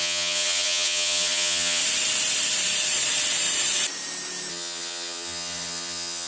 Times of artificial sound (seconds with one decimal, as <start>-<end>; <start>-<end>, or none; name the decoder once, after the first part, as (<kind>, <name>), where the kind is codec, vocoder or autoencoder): 0.0-1.8 (vocoder, HiFi-GAN); 4.5-6.3